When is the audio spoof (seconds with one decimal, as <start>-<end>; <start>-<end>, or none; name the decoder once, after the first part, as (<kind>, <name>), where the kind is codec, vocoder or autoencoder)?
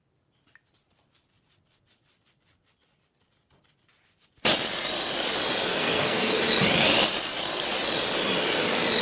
5.8-6.4 (codec, SNAC)